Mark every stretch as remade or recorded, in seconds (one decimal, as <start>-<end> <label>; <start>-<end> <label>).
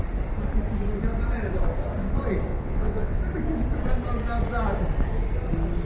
0.0-2.5 recorded; 2.5-3.2 remade; 3.2-5.8 recorded